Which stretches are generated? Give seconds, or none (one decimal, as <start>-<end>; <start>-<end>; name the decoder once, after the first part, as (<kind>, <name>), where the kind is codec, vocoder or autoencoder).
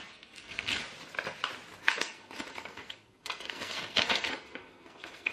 0.0-0.8 (codec, SNAC); 1.8-5.3